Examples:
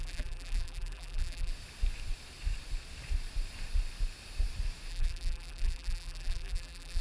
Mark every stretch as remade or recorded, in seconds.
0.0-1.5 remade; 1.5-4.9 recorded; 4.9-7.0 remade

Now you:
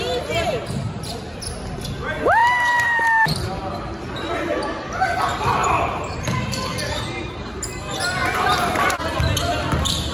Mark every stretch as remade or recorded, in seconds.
0.0-2.4 recorded; 2.4-3.0 remade; 3.0-5.6 recorded; 5.6-7.0 remade; 7.0-10.1 recorded

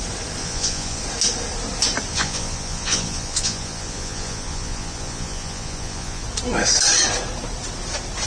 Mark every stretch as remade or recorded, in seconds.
0.0-0.4 recorded; 0.4-1.0 remade; 1.0-2.1 recorded; 2.1-6.2 remade; 6.2-8.3 recorded

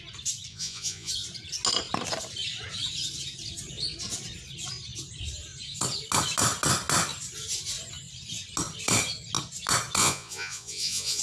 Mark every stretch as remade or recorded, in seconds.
0.0-0.5 recorded; 0.5-1.1 remade; 1.1-10.0 recorded; 10.0-11.2 remade

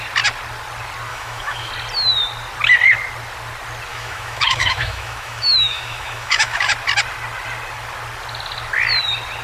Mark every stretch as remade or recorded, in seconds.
0.0-1.1 recorded; 1.1-1.7 remade; 1.7-3.9 recorded; 3.9-6.7 remade; 6.7-9.4 recorded

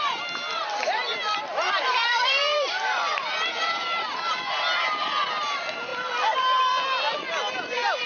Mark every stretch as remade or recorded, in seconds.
0.0-8.1 remade

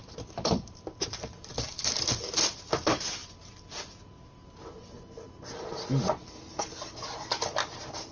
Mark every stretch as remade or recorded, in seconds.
0.0-4.4 remade; 4.4-6.6 recorded; 6.6-8.1 remade

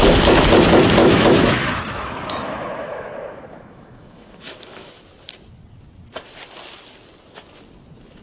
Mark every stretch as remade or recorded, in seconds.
0.0-1.0 recorded; 1.0-5.0 remade; 5.0-8.2 recorded